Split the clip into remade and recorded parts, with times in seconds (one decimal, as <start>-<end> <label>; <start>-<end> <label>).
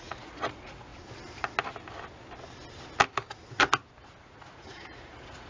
0.0-0.9 remade; 0.9-4.2 recorded; 4.2-5.5 remade